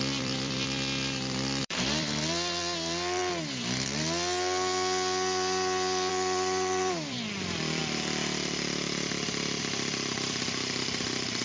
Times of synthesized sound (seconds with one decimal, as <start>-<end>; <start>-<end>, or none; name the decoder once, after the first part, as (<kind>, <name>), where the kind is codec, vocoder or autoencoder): 0.0-3.2 (vocoder, BigVGAN v2); 6.1-7.8; 9.6-11.4